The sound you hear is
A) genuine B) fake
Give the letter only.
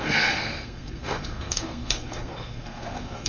B